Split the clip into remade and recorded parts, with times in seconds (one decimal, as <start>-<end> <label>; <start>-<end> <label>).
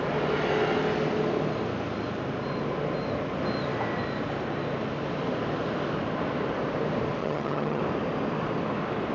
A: 0.0-7.2 recorded; 7.2-7.8 remade; 7.8-9.1 recorded